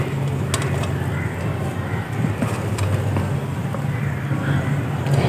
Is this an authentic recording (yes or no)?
yes